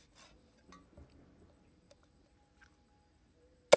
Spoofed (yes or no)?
no